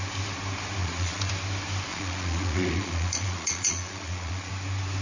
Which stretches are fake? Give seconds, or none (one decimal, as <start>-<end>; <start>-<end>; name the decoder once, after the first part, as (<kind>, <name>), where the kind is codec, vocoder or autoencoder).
0.8-1.3 (vocoder, Vocos); 1.9-4.5